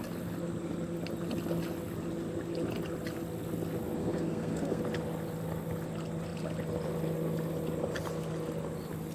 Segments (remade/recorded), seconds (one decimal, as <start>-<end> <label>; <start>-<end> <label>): 0.0-4.0 recorded; 4.0-4.8 remade; 4.8-9.1 recorded